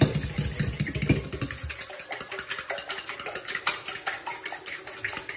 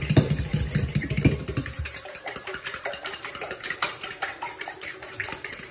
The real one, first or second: first